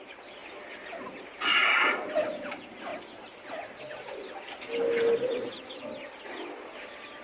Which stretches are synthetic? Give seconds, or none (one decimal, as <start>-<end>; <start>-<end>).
0.0-2.9; 5.5-7.2